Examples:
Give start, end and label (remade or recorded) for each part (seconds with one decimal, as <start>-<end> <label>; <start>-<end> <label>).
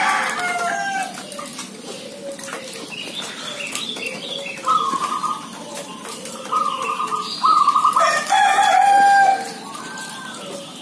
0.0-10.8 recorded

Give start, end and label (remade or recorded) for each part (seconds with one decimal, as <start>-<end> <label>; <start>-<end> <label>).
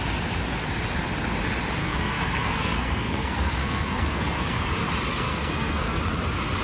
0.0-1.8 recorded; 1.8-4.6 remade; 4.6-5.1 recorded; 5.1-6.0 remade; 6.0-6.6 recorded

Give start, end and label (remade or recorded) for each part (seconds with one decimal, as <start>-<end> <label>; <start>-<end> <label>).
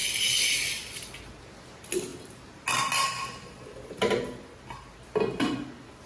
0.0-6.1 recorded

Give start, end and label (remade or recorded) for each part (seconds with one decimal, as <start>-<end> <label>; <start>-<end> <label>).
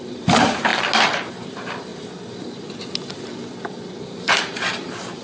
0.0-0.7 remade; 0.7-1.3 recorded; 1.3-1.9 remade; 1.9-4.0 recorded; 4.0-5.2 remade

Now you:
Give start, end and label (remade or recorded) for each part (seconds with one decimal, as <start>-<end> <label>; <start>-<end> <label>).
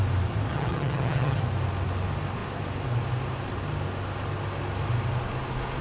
0.0-0.5 recorded; 0.5-1.4 remade; 1.4-5.8 recorded